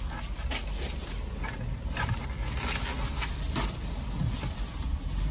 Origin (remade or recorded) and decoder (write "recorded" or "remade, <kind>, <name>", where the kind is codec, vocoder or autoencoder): recorded